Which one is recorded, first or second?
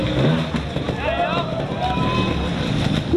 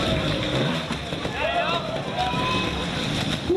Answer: first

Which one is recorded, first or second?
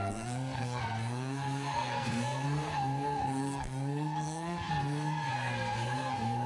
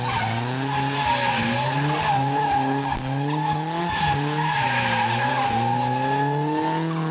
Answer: second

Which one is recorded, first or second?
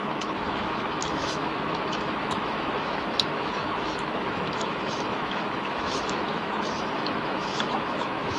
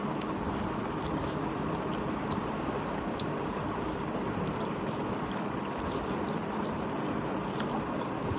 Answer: second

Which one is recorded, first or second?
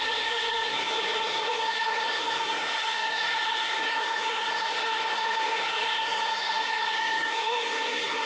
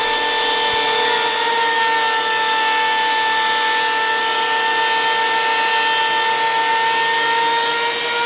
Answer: second